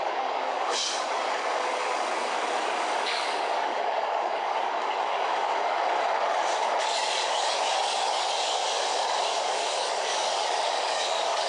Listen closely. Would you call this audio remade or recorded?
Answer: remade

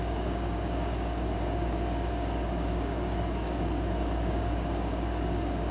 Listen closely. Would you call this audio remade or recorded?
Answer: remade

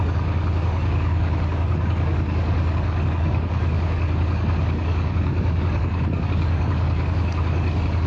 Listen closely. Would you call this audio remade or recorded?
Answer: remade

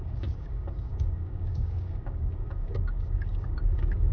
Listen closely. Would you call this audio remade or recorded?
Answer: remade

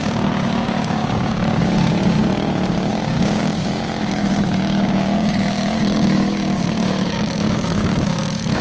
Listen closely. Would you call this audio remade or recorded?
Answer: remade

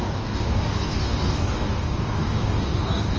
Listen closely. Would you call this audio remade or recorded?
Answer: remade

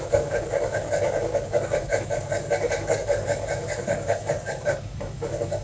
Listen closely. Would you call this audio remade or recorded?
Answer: remade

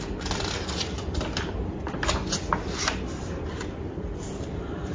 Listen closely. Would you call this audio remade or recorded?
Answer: recorded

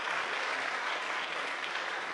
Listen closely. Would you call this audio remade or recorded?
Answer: remade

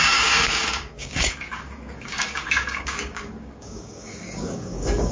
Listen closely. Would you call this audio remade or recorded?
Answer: remade